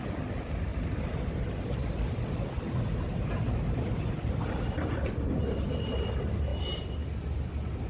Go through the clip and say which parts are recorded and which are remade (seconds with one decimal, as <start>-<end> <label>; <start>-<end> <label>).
0.0-7.9 remade